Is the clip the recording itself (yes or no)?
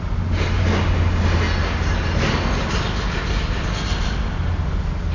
yes